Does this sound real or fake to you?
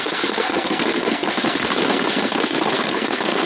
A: fake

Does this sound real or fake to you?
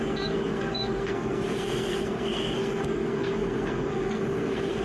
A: fake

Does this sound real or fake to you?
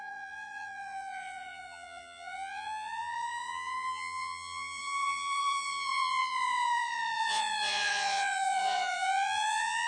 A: fake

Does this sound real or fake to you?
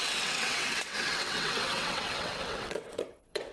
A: fake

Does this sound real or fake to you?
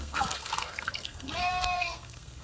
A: fake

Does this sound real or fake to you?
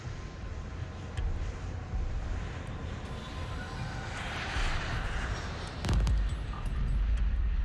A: real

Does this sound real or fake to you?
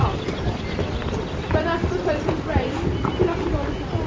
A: real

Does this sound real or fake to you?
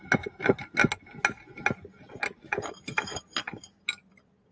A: real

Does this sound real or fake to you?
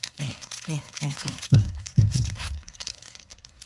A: fake